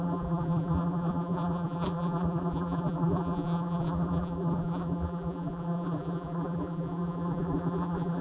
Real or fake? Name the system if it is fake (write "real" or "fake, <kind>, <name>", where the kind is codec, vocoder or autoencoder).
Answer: fake, vocoder, BigVGAN v2